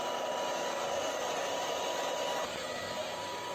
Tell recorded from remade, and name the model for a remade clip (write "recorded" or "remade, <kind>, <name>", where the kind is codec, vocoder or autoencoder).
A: recorded